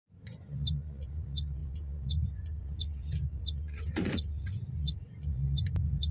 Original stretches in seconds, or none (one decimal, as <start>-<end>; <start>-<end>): none